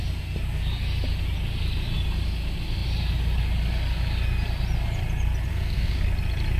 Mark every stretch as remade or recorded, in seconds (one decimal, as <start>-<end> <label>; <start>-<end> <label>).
0.0-5.5 recorded; 5.5-6.0 remade; 6.0-6.6 recorded